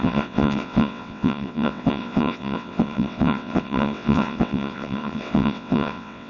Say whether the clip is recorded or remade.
remade